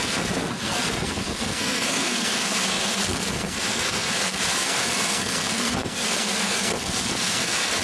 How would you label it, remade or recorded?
remade